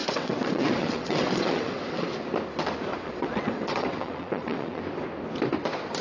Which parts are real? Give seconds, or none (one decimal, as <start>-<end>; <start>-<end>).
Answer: 2.1-2.9; 4.8-6.0